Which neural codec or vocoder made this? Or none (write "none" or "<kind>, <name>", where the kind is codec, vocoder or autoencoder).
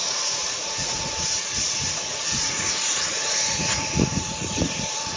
vocoder, Vocos